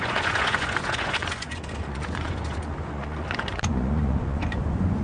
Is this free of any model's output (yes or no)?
no